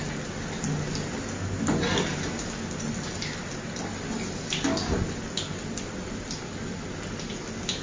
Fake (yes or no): no